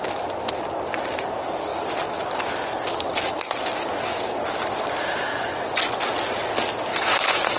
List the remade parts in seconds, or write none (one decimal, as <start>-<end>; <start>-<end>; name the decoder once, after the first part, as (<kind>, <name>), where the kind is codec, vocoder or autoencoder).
5.3-6.0 (vocoder, Vocos); 6.9-7.6